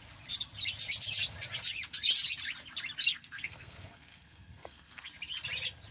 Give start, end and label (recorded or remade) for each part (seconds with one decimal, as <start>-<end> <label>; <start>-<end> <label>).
0.0-3.1 recorded; 3.1-5.1 remade; 5.1-5.9 recorded